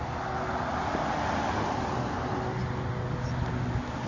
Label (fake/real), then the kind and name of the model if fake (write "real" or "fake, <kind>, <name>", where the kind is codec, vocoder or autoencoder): real